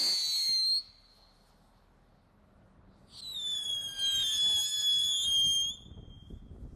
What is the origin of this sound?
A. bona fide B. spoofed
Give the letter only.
A